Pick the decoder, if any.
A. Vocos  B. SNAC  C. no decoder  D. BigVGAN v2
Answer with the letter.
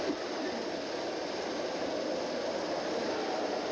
C